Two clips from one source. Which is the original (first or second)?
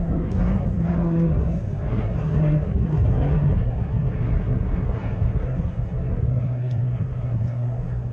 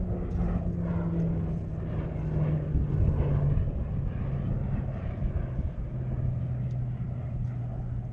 second